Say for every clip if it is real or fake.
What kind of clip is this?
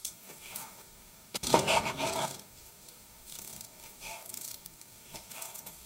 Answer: fake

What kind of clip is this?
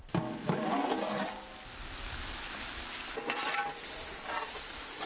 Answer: real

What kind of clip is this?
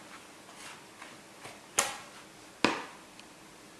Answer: real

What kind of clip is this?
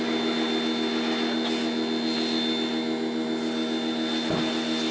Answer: real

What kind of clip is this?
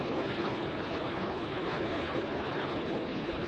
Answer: fake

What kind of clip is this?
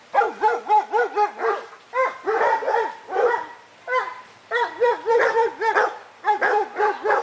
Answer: real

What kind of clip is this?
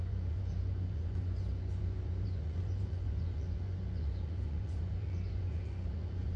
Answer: fake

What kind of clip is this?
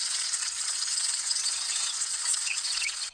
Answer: fake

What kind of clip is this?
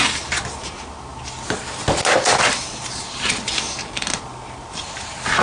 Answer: real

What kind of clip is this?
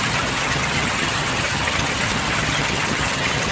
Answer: fake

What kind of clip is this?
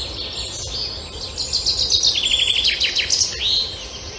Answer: real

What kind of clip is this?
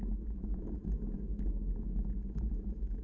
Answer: fake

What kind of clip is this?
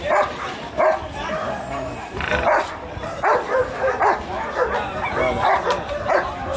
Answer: real